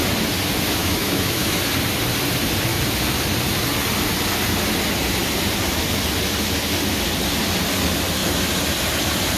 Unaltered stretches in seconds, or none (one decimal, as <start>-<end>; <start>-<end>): 0.0-0.8; 1.6-9.4